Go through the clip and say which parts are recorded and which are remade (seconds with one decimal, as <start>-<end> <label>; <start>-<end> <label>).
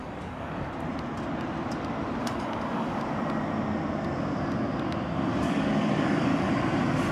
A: 0.0-0.7 remade; 0.7-2.2 recorded; 2.2-3.0 remade; 3.0-5.3 recorded; 5.3-6.5 remade; 6.5-7.1 recorded